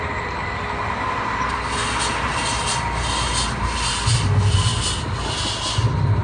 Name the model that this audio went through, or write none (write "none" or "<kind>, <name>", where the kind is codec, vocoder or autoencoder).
none